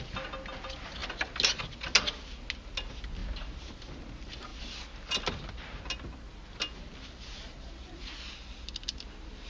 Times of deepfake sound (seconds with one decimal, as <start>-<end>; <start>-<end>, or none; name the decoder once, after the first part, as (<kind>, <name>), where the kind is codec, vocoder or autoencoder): none